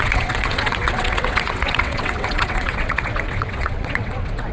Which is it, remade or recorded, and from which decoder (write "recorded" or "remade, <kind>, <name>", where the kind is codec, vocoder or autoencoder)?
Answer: remade, vocoder, WaveNeXt